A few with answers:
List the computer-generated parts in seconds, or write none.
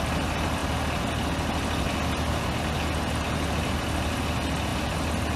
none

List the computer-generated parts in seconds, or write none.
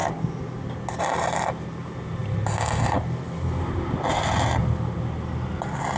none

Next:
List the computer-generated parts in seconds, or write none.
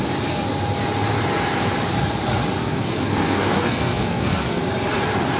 2.6-4.6 (codec, SNAC)